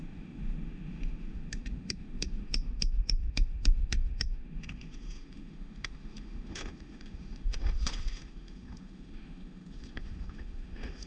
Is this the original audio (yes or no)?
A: no